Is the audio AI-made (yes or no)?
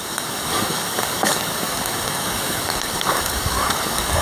yes